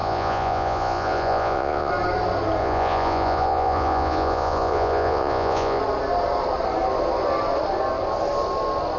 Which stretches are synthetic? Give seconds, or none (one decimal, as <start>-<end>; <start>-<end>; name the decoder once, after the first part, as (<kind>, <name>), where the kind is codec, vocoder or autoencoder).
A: 0.0-1.9 (vocoder, Vocos); 2.6-5.8